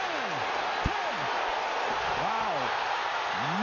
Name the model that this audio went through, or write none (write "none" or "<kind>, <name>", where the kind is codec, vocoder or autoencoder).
none